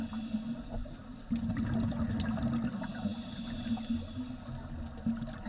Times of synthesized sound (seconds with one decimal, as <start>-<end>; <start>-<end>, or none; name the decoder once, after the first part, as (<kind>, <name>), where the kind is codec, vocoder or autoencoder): none

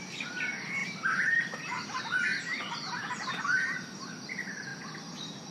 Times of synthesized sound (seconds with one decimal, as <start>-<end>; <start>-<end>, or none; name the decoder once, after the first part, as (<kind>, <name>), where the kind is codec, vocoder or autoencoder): 0.8-4.1 (vocoder, BigVGAN v2)

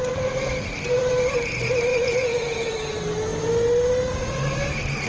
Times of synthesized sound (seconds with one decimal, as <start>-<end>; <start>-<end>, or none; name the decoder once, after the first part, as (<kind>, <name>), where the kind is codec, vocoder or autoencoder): 1.9-2.7 (vocoder, Vocos)

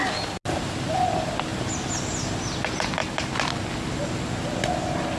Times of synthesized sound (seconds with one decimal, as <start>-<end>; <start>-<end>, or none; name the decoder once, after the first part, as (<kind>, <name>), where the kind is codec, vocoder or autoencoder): none